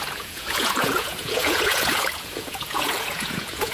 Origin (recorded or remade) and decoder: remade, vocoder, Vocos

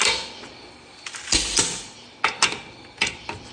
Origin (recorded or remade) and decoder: recorded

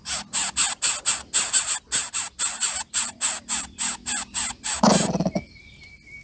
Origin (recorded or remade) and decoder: recorded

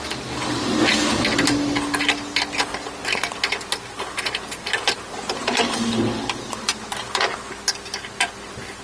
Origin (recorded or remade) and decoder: recorded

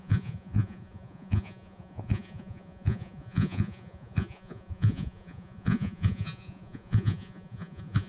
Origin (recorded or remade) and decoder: remade, vocoder, Vocos